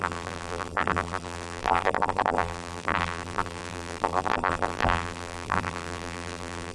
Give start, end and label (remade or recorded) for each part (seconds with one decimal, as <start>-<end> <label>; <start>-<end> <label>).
0.0-6.7 remade